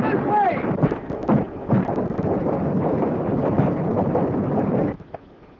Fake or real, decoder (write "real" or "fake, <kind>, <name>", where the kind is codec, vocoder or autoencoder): real